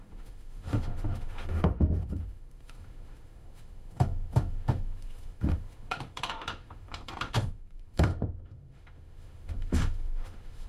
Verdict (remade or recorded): remade